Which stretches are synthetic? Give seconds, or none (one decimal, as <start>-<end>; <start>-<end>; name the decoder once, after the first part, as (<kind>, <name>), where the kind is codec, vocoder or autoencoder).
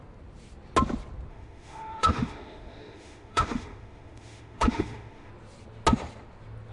1.3-5.3 (autoencoder, DAC-VAE)